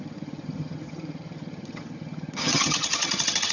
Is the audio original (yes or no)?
no